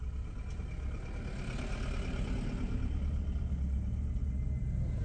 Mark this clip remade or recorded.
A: recorded